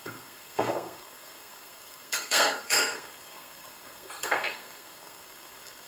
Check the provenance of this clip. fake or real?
fake